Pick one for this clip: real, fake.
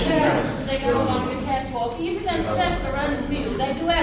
real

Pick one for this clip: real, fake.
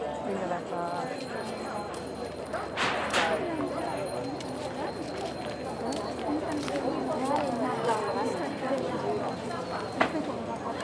real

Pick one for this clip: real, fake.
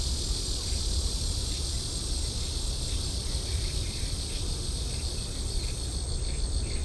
real